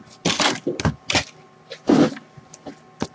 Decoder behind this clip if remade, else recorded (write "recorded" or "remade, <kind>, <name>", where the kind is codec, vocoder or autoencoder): recorded